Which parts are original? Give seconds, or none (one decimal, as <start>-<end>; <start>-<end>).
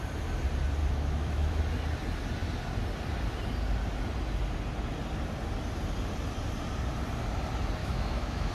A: 0.0-0.8; 1.6-7.8